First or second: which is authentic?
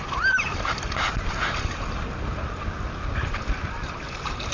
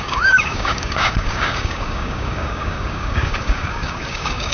first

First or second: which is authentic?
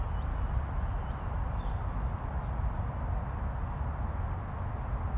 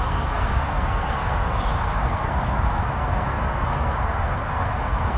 first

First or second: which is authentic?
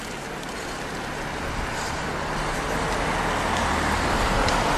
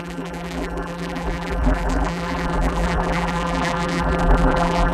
first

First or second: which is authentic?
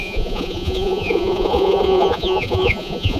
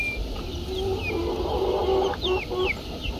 second